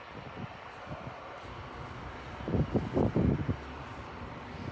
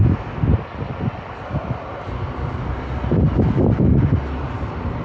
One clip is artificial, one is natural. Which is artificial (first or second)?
first